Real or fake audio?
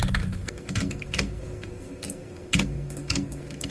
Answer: fake